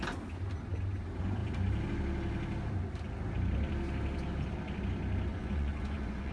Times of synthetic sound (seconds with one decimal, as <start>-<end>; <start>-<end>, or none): 5.3-6.3